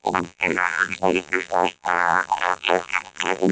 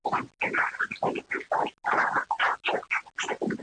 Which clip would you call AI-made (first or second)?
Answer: first